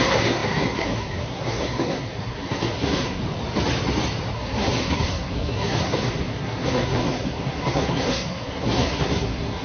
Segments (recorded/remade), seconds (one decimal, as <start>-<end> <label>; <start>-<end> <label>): 0.0-3.2 remade; 3.2-4.3 recorded; 4.3-9.6 remade